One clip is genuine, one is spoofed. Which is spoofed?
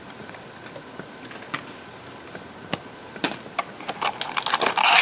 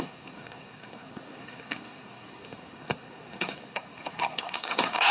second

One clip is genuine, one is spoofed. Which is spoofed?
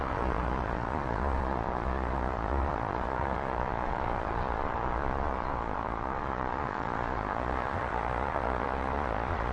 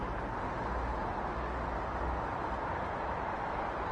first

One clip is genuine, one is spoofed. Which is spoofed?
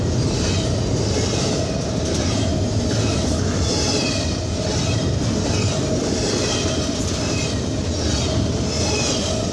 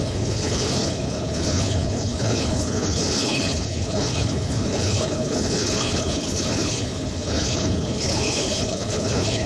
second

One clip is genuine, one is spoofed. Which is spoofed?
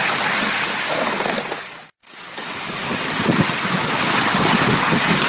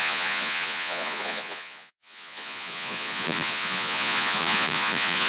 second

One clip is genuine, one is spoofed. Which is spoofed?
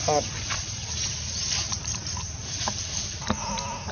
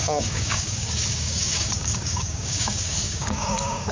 second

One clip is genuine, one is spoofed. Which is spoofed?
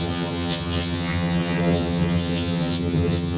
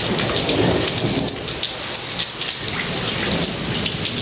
first